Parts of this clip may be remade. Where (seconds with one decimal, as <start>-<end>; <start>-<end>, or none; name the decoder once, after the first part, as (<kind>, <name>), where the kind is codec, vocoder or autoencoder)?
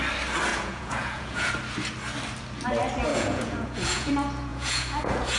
0.5-1.5 (vocoder, Vocos); 3.1-4.1; 4.5-5.4